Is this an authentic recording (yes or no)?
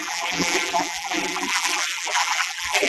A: no